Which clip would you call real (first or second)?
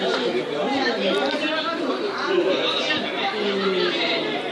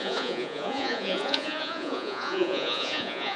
first